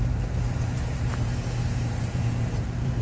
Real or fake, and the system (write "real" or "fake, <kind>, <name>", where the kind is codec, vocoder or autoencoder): fake, vocoder, BigVGAN v2